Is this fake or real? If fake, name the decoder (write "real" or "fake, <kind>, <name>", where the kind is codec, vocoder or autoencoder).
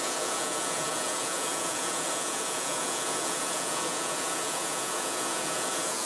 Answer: fake, vocoder, Vocos